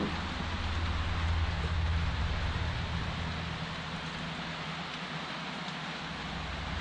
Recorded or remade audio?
recorded